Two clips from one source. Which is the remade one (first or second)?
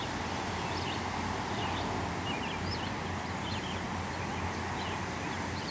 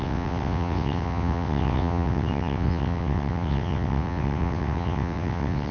second